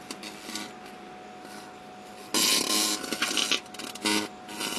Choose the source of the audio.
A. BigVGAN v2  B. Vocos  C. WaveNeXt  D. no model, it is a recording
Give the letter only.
D